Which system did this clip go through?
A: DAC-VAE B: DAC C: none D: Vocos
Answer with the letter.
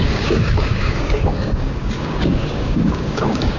B